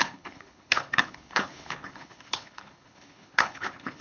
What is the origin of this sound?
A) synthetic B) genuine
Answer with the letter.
A